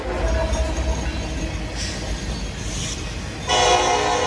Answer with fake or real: real